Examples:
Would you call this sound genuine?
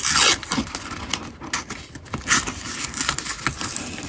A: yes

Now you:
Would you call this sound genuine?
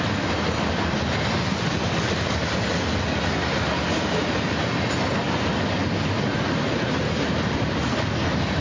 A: yes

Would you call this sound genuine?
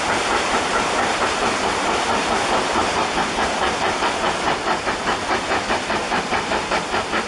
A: no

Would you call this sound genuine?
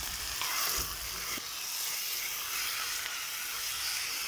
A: yes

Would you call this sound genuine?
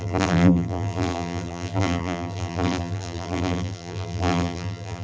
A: no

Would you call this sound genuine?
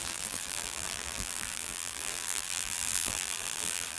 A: no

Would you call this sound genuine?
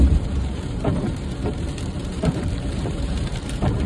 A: no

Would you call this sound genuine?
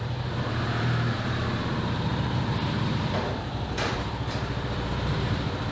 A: no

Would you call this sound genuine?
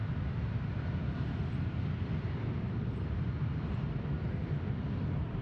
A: yes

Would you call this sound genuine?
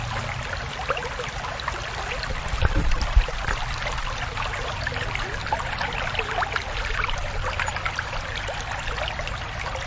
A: yes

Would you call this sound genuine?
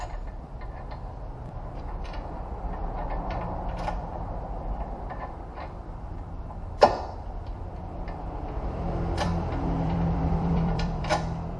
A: no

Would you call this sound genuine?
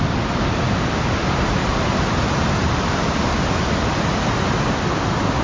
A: yes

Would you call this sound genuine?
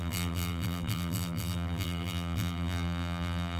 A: no